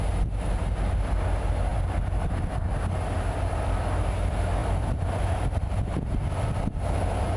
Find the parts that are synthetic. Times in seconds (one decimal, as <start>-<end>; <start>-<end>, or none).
none